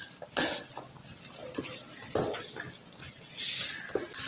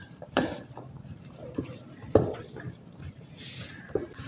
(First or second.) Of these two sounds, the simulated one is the second